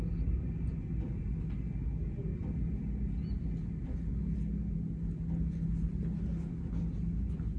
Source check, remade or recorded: recorded